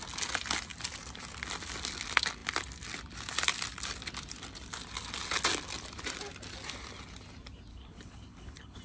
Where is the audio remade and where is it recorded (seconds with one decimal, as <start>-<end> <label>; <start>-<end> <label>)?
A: 0.0-7.7 recorded; 7.7-8.8 remade

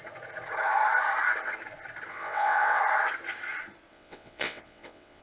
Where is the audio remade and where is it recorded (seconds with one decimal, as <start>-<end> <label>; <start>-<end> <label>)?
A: 0.0-2.1 recorded; 2.1-2.8 remade; 2.8-3.9 recorded; 3.9-5.2 remade

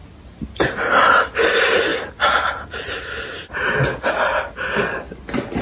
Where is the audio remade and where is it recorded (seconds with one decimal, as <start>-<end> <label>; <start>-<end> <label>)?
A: 0.0-5.6 recorded

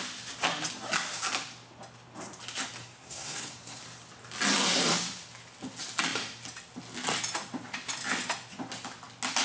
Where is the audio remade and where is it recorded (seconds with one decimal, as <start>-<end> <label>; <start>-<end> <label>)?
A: 0.0-2.8 recorded; 2.8-3.8 remade; 3.8-9.4 recorded